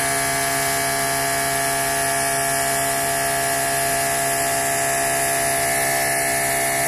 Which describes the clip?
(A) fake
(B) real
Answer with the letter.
B